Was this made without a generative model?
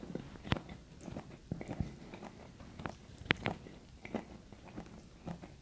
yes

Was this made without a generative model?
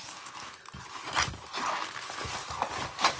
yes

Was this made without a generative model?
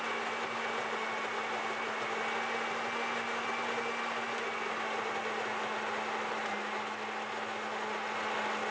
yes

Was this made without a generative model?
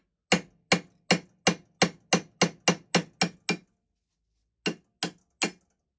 yes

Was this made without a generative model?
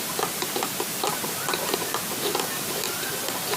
yes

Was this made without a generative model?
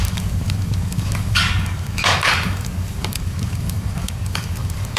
no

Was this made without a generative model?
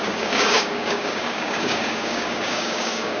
no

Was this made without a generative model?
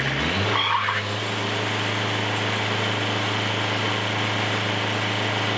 yes